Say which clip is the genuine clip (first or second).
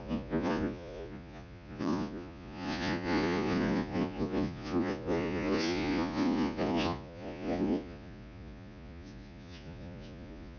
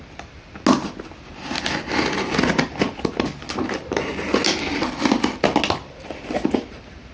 second